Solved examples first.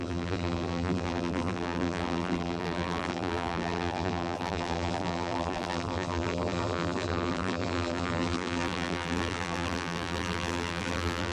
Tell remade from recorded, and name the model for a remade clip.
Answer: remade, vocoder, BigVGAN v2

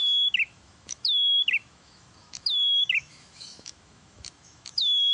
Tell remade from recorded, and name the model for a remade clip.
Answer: remade, autoencoder, DAC-VAE